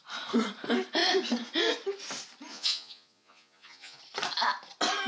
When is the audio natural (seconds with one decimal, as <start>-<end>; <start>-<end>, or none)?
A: 0.0-2.5; 4.0-5.1